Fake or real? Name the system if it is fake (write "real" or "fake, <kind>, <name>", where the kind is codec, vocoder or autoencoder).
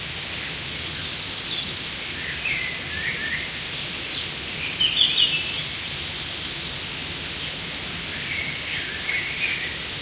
real